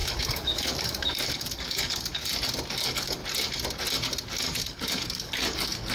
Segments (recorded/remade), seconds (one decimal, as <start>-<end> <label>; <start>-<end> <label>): 0.0-2.1 remade; 2.1-2.8 recorded; 2.8-3.2 remade; 3.2-4.6 recorded; 4.6-5.9 remade